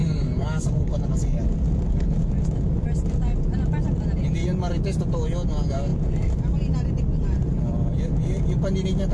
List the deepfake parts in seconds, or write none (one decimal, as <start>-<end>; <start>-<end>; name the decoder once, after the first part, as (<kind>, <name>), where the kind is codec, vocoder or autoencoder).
0.0-1.4 (codec, DAC)